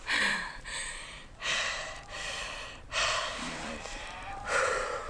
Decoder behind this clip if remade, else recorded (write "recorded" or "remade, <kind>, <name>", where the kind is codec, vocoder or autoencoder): remade, vocoder, BigVGAN v2